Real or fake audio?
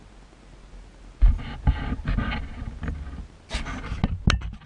real